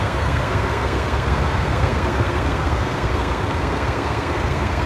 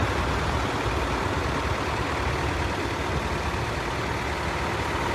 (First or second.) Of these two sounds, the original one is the second